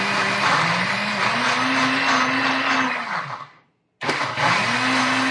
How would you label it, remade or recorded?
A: recorded